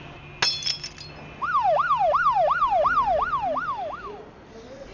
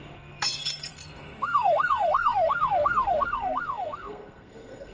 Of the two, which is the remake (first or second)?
second